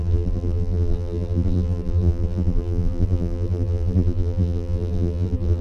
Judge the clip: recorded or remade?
remade